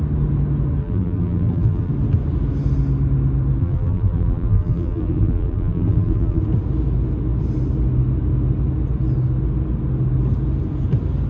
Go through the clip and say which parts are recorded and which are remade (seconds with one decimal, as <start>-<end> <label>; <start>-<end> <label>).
0.0-0.8 recorded; 0.8-1.9 remade; 1.9-3.6 recorded; 3.6-6.4 remade; 6.4-11.3 recorded